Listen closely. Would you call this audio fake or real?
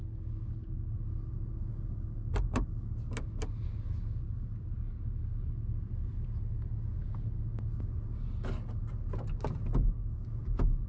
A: real